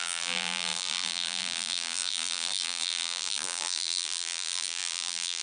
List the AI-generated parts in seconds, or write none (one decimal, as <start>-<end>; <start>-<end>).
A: 0.0-5.4